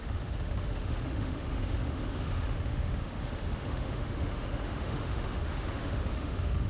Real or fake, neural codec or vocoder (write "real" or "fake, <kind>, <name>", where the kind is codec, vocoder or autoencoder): fake, autoencoder, DAC-VAE